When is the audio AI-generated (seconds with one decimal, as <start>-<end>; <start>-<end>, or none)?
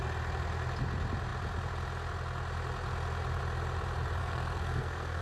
4.2-5.2